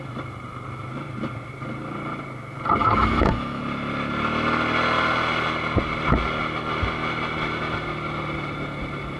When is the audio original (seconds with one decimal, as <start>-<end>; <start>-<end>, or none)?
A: 0.0-2.8; 3.6-9.2